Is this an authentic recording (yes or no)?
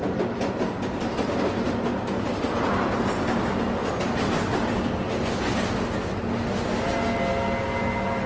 yes